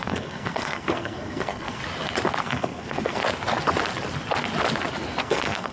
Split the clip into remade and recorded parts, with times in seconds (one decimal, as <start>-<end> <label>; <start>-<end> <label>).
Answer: 0.0-1.8 remade; 1.8-2.4 recorded; 2.4-3.2 remade; 3.2-5.2 recorded; 5.2-5.7 remade